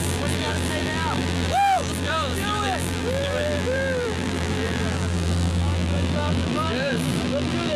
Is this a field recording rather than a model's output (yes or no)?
no